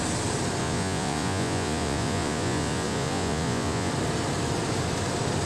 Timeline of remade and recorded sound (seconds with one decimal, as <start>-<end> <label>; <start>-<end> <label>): 0.0-0.6 recorded; 0.6-3.9 remade; 3.9-5.5 recorded